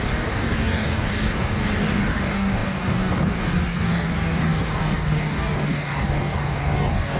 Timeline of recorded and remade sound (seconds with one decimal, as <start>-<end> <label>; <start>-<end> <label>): 0.0-7.2 remade